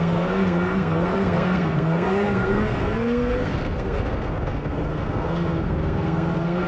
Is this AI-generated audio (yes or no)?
yes